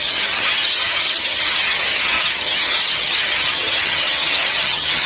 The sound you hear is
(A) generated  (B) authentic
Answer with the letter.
A